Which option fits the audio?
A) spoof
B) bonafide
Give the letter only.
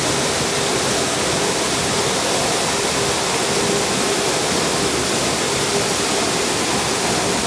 B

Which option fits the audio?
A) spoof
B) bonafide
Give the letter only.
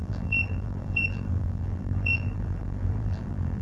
A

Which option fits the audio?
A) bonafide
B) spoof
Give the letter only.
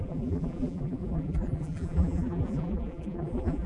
B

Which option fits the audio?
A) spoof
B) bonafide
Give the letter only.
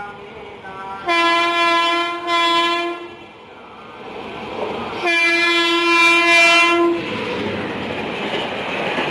B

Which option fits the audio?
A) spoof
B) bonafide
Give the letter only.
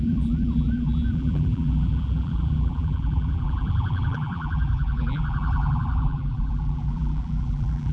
A